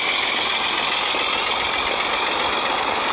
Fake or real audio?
real